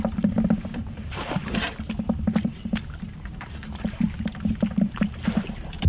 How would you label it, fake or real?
fake